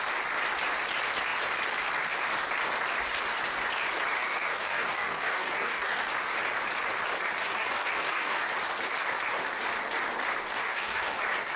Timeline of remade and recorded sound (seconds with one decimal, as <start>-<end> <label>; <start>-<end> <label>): 0.0-4.2 recorded; 4.2-6.0 remade; 6.0-7.4 recorded; 7.4-8.4 remade; 8.4-10.5 recorded; 10.5-11.2 remade; 11.2-11.6 recorded